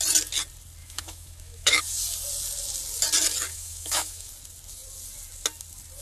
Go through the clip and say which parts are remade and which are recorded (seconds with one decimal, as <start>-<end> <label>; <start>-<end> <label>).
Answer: 0.0-0.8 recorded; 0.8-1.8 remade; 1.8-3.5 recorded; 3.5-4.3 remade; 4.3-6.0 recorded